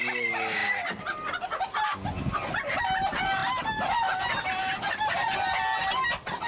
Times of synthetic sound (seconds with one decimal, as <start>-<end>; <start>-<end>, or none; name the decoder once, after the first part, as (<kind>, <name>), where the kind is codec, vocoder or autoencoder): none